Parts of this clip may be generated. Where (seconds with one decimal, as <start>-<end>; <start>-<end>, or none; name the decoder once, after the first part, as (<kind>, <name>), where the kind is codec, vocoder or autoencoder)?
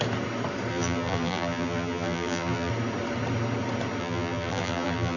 0.7-2.7 (vocoder, BigVGAN v2); 4.0-5.2